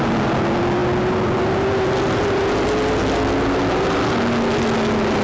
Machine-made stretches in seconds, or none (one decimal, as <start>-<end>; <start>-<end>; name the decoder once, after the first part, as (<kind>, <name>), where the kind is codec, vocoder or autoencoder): none